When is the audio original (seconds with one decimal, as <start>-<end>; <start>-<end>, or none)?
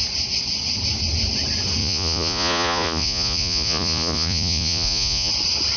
0.0-1.8; 5.3-5.8